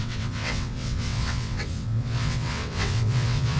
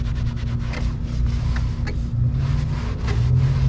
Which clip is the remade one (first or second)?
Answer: first